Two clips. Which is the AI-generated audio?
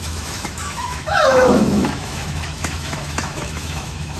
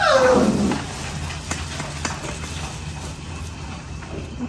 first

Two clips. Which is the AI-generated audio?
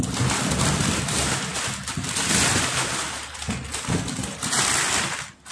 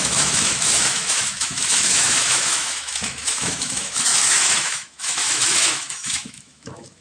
second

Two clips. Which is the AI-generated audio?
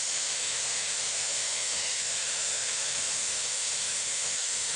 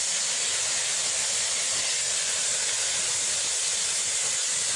first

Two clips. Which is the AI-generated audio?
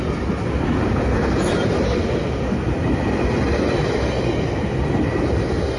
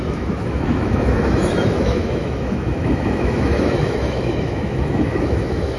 second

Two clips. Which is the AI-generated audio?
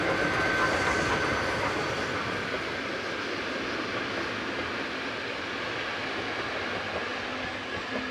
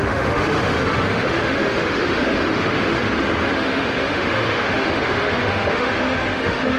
second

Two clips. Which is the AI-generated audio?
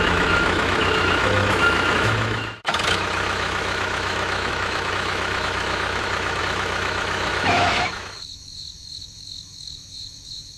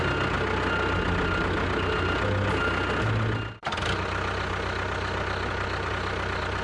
first